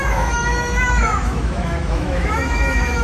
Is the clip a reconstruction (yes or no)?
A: yes